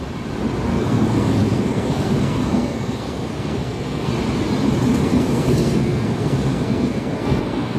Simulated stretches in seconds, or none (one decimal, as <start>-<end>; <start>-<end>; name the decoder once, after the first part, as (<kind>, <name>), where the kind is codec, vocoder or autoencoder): 0.7-4.1 (codec, SNAC); 4.9-7.8